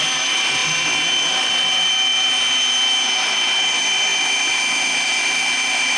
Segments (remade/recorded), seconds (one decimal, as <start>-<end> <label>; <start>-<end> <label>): 0.0-6.0 recorded